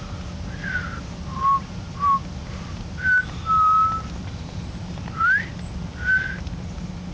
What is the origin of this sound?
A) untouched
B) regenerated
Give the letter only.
A